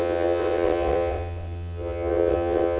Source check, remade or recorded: remade